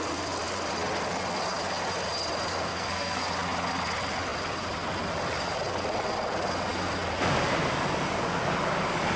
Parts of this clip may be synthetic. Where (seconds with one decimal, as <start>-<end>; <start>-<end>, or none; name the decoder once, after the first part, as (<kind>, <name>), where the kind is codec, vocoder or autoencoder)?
2.5-3.3 (codec, SNAC)